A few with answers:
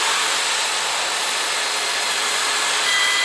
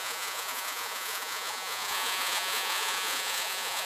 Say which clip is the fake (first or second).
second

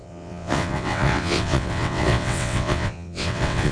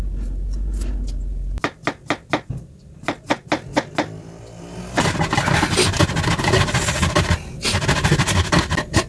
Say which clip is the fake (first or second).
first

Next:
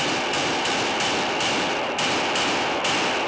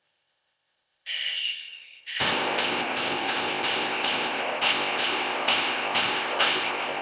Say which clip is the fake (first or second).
second